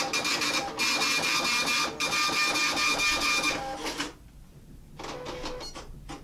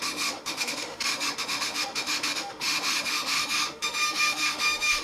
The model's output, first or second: second